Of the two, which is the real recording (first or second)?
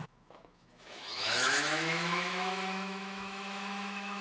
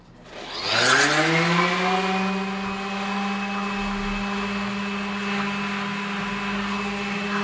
second